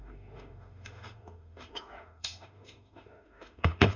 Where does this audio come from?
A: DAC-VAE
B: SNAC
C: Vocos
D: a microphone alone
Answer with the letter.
A